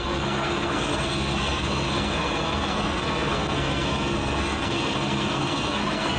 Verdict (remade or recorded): remade